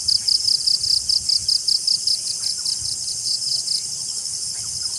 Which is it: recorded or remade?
recorded